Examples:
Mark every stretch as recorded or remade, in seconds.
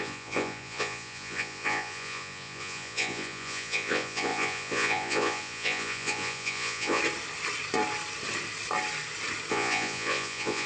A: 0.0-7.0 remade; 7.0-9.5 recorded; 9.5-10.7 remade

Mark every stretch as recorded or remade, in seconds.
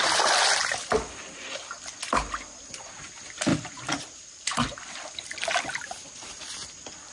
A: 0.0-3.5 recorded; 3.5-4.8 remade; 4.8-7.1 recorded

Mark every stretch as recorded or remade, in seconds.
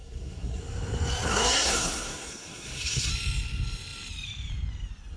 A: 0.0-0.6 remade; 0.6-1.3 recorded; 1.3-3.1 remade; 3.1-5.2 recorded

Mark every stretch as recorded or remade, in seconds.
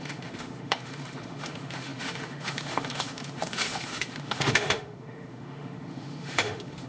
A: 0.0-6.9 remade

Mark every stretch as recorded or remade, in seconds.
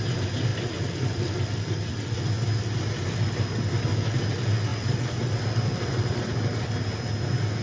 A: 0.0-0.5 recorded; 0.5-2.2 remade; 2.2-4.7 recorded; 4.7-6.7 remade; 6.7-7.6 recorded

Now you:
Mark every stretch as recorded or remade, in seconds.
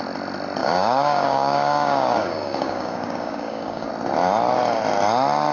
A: 0.0-0.6 recorded; 0.6-3.9 remade; 3.9-5.5 recorded